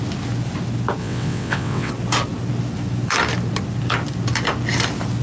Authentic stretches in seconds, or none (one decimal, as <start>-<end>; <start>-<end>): 0.0-1.0; 1.9-5.2